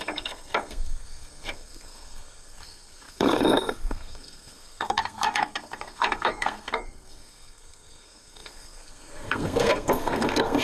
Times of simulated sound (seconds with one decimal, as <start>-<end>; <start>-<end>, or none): 0.0-10.6